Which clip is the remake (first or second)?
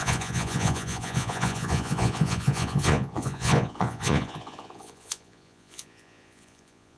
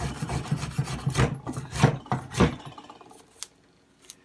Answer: first